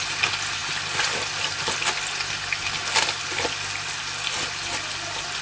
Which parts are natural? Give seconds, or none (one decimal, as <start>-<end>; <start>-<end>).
0.0-5.4